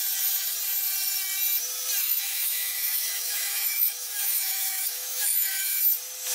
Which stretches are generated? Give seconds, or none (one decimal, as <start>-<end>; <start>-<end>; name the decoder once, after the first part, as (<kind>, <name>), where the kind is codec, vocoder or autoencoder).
2.0-5.8 (autoencoder, DAC-VAE)